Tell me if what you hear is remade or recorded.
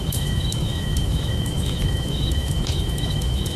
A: remade